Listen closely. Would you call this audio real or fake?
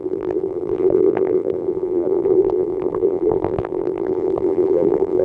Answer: fake